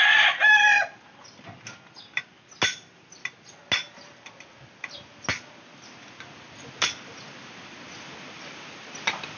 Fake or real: real